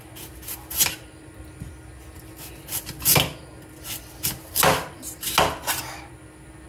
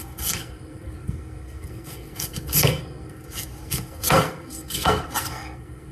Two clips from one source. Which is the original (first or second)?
first